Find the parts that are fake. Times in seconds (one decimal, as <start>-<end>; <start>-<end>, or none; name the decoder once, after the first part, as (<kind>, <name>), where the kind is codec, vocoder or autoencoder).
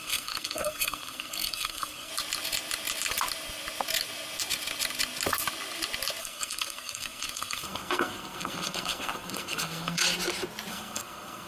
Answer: 0.0-2.1 (codec, SNAC); 6.2-10.0; 10.7-11.5